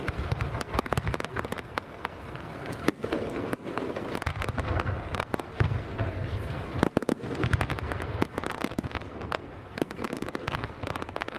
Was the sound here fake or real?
fake